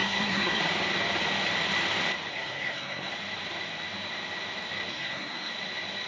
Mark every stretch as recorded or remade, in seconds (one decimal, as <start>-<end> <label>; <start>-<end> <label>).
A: 0.0-0.6 remade; 0.6-2.3 recorded; 2.3-3.1 remade; 3.1-4.9 recorded; 4.9-5.5 remade; 5.5-6.1 recorded